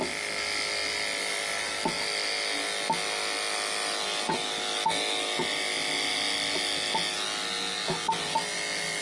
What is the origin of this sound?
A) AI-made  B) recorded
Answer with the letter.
B